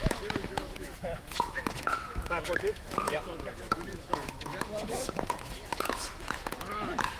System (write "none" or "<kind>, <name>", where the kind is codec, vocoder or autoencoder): autoencoder, DAC-VAE